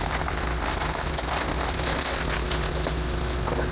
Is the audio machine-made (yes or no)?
no